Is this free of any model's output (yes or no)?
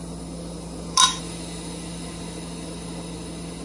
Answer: yes